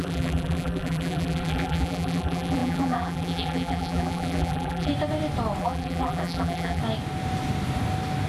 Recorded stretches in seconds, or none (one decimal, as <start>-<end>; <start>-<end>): 4.9-5.6; 6.8-8.3